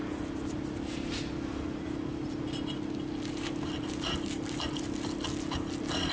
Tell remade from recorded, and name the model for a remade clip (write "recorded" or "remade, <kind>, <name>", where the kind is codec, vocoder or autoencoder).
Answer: recorded